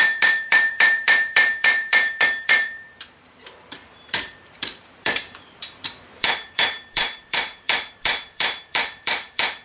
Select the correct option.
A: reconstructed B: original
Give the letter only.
A